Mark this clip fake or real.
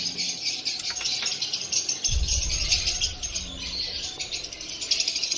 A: real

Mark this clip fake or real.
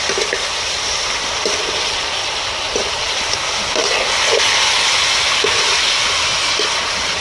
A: real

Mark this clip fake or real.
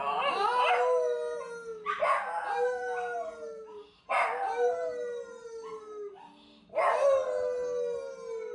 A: real